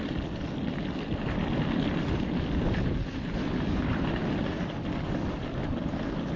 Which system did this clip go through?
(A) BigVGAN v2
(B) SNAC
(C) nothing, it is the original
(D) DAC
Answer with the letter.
C